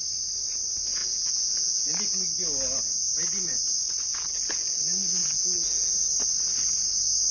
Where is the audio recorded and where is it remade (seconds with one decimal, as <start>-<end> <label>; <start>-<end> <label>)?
0.0-1.0 recorded; 1.0-2.0 remade; 2.0-4.1 recorded; 4.1-4.8 remade; 4.8-5.2 recorded; 5.2-5.9 remade; 5.9-7.3 recorded